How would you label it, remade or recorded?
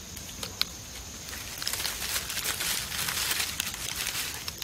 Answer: recorded